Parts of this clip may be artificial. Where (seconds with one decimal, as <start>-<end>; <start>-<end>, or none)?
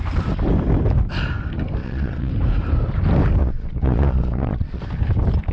1.8-2.3; 3.4-4.8